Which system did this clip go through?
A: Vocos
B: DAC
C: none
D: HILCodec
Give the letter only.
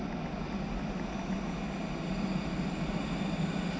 C